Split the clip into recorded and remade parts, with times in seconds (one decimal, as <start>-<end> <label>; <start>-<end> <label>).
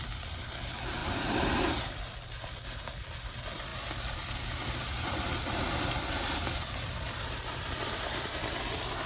0.0-9.1 recorded